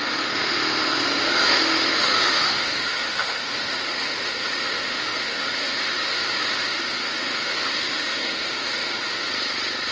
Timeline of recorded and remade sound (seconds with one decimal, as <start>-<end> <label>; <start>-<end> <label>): 0.0-9.3 remade; 9.3-9.9 recorded